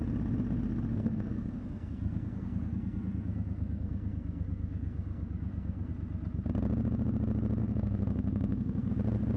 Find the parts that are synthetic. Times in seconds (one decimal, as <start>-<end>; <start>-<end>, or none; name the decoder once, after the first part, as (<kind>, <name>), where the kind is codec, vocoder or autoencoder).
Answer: 0.9-5.9 (codec, SNAC); 7.6-8.9